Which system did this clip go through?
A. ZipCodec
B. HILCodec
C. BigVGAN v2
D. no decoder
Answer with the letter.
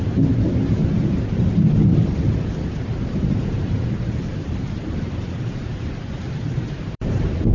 C